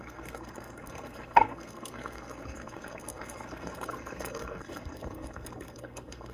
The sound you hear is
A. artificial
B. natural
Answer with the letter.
A